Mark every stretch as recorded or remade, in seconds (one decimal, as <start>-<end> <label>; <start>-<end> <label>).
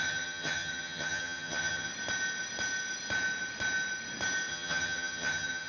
0.0-1.9 remade; 1.9-4.5 recorded; 4.5-5.7 remade